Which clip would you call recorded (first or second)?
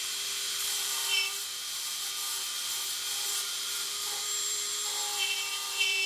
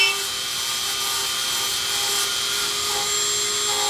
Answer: second